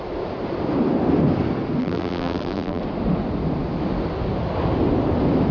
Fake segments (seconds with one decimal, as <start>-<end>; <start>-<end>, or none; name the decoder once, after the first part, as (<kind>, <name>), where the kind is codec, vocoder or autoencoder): 1.8-2.8 (vocoder, BigVGAN v2)